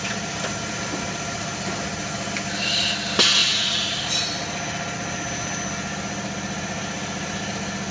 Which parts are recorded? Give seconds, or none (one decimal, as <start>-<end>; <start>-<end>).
0.0-3.4; 4.1-7.9